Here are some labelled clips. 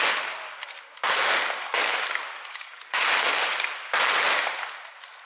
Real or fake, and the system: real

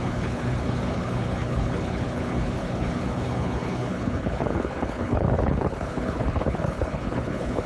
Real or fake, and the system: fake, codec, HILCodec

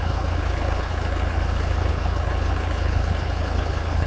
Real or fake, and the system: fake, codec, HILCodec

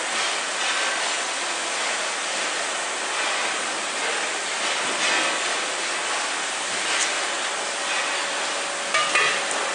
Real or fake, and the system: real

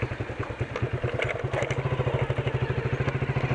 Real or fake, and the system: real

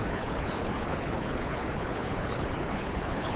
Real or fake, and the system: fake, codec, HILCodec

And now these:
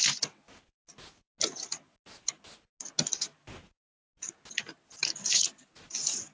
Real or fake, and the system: real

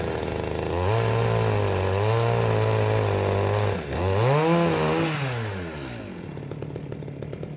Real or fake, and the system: real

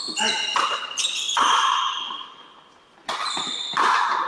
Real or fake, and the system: real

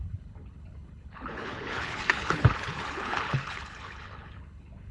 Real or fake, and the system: fake, codec, HILCodec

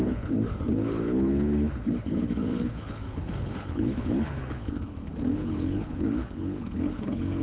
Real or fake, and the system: fake, codec, HILCodec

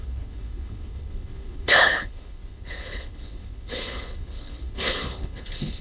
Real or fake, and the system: fake, codec, HILCodec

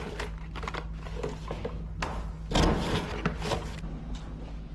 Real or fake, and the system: real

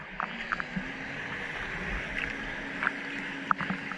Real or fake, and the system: real